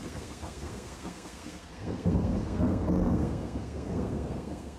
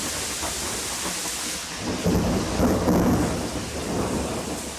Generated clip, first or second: first